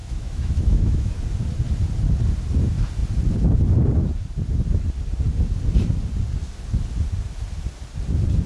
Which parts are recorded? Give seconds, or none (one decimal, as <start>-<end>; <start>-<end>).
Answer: 1.2-8.5